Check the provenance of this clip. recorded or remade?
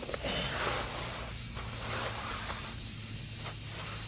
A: recorded